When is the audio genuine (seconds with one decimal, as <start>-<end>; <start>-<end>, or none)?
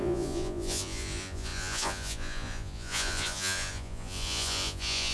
none